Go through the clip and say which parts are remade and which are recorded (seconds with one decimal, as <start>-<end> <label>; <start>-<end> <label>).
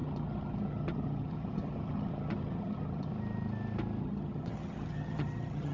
0.0-3.1 remade; 3.1-4.0 recorded; 4.0-5.7 remade